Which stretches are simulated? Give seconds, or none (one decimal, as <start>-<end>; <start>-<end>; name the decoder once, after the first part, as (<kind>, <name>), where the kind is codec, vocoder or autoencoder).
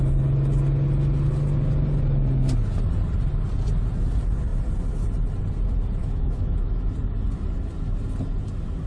6.0-6.7 (autoencoder, DAC-VAE)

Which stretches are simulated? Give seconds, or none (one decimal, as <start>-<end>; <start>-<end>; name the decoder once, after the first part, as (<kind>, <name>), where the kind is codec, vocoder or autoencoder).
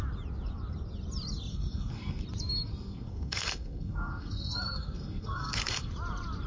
1.5-2.2 (codec, SNAC); 2.7-5.9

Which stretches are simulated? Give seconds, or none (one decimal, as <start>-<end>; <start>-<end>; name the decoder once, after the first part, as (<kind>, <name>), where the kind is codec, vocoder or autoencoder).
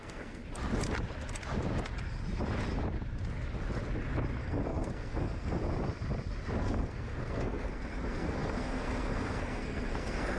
0.0-0.4 (codec, SNAC); 4.4-5.6; 6.6-10.4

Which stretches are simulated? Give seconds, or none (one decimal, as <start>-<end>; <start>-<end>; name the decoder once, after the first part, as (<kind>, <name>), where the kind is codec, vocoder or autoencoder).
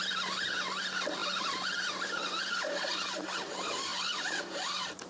3.9-4.4 (vocoder, BigVGAN v2)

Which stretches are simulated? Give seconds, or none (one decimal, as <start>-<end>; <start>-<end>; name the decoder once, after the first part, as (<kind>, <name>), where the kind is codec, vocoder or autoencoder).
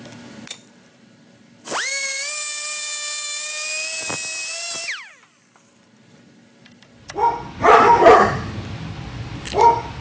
none